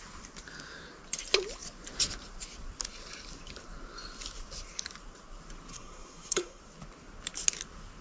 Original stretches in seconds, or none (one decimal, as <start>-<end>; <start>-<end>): 0.0-5.7; 6.6-8.0

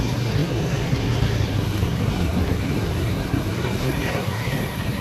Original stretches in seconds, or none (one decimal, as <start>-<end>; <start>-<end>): none

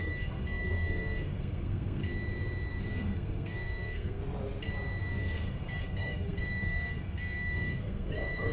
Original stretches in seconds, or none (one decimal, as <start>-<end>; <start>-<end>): 2.0-2.7; 4.2-5.0